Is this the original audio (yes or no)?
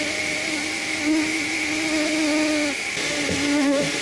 yes